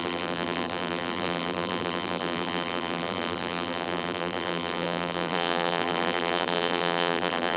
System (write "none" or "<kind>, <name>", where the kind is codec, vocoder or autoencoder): vocoder, BigVGAN v2